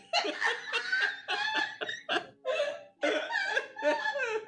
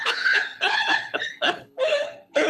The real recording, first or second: first